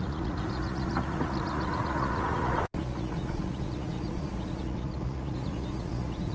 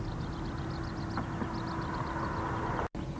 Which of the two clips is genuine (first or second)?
second